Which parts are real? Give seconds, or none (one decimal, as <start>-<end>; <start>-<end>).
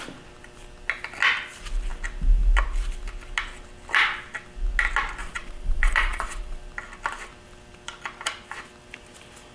0.0-5.2; 6.6-9.5